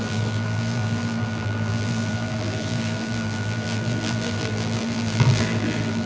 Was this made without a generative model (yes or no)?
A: no